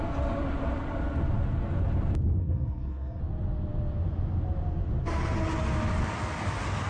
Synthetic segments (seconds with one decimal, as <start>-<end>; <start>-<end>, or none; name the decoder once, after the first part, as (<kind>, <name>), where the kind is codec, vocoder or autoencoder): 2.4-3.2 (codec, SNAC)